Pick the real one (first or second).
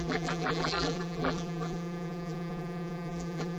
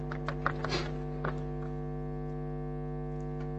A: second